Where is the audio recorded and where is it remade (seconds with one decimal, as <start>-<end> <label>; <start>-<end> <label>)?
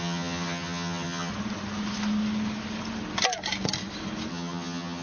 0.0-1.3 remade; 1.3-4.3 recorded; 4.3-5.0 remade